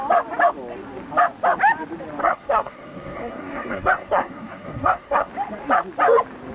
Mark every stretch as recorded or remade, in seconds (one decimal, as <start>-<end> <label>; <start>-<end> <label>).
0.0-2.2 recorded; 2.2-5.3 remade; 5.3-6.5 recorded